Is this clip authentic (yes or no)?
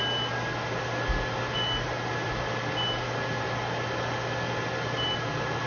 yes